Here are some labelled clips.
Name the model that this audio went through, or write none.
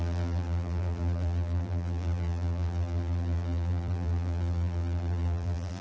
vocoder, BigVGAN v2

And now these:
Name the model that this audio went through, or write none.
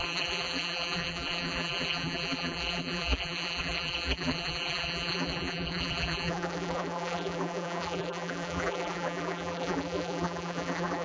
vocoder, BigVGAN v2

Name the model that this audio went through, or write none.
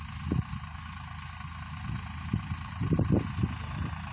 none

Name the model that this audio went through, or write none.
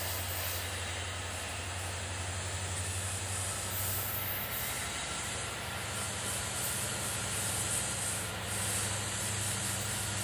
none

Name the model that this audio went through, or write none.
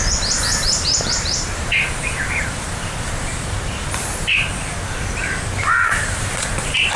vocoder, BigVGAN v2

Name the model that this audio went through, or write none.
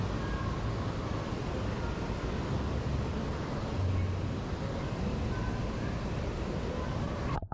none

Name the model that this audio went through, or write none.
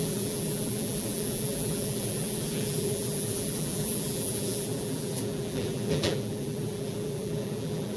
vocoder, BigVGAN v2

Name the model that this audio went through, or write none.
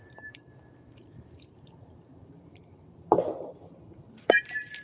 vocoder, BigVGAN v2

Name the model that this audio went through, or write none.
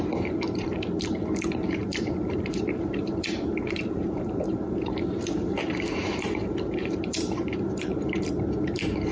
vocoder, BigVGAN v2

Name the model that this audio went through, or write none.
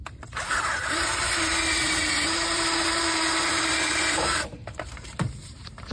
vocoder, BigVGAN v2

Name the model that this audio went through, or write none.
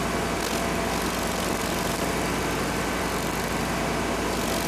none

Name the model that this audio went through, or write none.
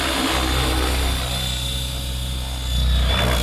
none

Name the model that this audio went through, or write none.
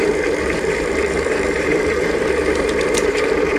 vocoder, BigVGAN v2